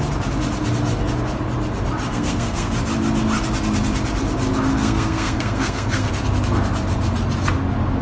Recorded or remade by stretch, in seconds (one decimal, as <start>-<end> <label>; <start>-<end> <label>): 0.0-2.1 recorded; 2.1-2.7 remade; 2.7-4.7 recorded; 4.7-6.1 remade; 6.1-8.0 recorded